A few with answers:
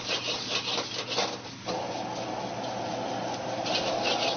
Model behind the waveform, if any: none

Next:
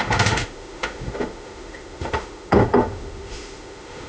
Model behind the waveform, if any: autoencoder, DAC-VAE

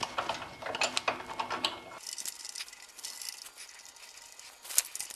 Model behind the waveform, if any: none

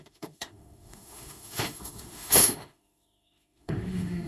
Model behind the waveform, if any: autoencoder, DAC-VAE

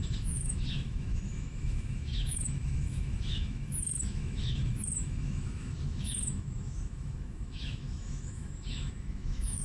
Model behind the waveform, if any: autoencoder, DAC-VAE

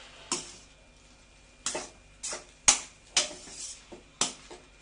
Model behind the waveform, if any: none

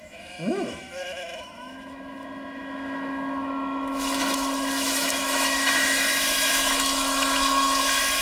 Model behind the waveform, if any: autoencoder, DAC-VAE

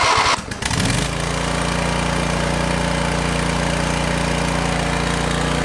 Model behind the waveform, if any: none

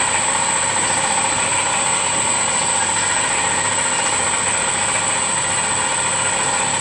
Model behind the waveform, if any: none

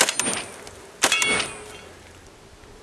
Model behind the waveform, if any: none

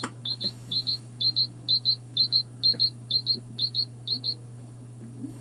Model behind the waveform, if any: autoencoder, DAC-VAE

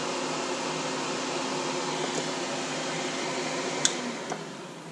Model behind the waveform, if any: none